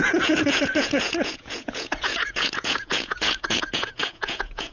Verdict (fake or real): fake